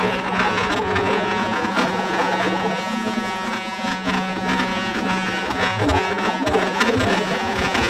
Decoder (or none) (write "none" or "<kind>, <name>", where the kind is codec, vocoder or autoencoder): vocoder, Vocos